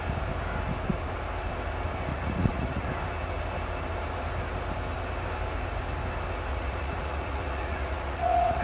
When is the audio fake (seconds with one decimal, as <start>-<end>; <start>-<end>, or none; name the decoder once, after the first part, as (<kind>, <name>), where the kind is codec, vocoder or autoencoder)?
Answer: 2.1-2.9 (vocoder, Vocos); 6.5-8.6